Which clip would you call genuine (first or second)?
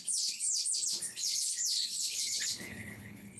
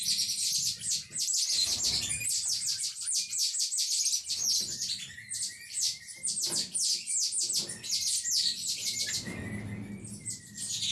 second